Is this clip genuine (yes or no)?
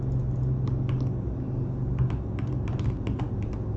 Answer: yes